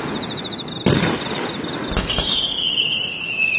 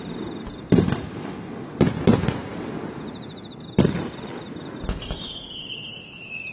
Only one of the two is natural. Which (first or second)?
second